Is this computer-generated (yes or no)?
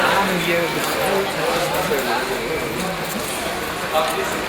no